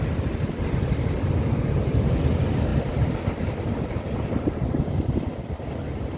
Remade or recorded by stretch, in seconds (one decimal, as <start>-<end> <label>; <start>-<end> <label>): 0.0-5.3 recorded; 5.3-6.2 remade